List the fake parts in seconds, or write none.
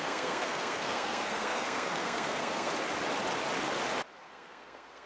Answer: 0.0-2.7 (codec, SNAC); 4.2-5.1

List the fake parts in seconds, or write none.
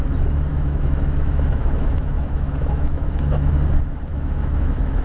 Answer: 0.5-3.5 (autoencoder, DAC-VAE); 4.1-5.0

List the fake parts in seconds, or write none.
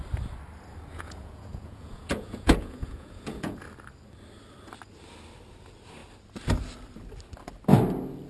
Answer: 0.9-3.6 (vocoder, Vocos)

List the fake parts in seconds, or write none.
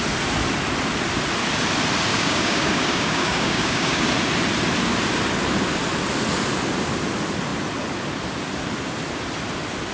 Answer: 2.1-4.1 (codec, DAC)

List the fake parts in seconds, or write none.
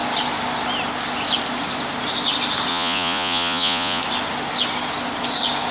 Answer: 2.7-4.0 (vocoder, Vocos)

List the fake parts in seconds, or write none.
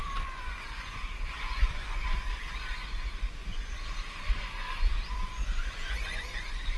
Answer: 0.0-6.8 (vocoder, Vocos)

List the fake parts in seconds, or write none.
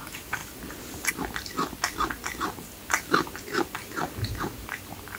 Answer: 0.4-1.1 (vocoder, BigVGAN v2)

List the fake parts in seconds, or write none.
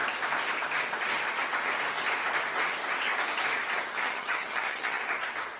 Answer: 4.0-5.0 (vocoder, HiFi-GAN)